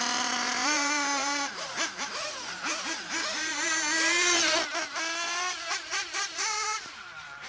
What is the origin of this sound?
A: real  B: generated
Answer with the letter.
B